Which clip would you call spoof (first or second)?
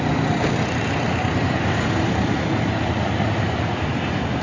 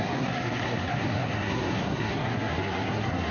second